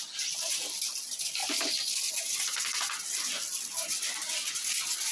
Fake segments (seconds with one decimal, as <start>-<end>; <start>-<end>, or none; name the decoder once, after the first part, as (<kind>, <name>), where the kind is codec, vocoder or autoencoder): none